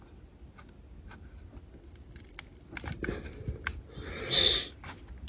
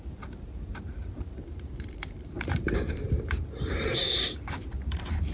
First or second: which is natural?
first